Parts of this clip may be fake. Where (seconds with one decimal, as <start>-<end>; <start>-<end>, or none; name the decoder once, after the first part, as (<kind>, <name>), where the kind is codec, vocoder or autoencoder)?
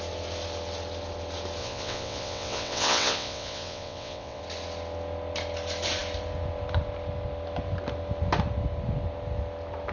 1.6-4.4 (vocoder, WaveNeXt)